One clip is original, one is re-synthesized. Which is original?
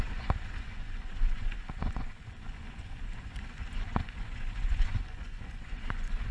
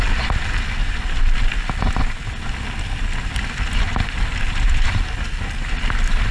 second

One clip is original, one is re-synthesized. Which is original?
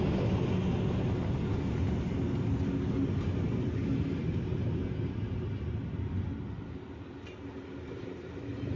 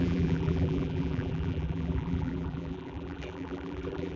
first